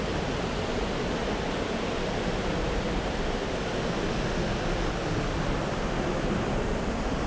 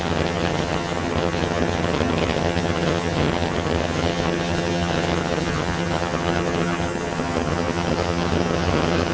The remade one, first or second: second